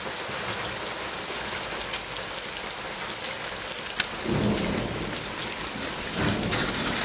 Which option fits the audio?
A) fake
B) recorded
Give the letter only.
A